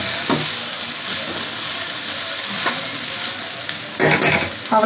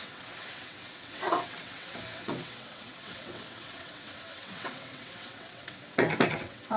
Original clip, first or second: first